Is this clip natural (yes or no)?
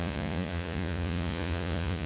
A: no